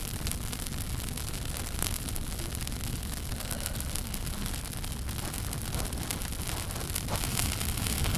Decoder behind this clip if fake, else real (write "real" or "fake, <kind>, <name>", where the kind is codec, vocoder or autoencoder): real